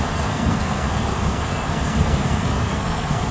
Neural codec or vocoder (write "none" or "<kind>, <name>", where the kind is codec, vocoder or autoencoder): codec, SNAC